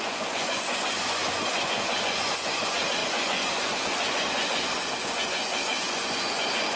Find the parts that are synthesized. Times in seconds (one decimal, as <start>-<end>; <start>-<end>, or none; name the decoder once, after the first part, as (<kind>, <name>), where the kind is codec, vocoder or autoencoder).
0.0-6.8 (vocoder, Vocos)